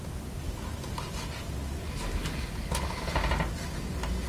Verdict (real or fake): real